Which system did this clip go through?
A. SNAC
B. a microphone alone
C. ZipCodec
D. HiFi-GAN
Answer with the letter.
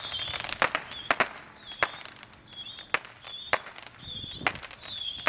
B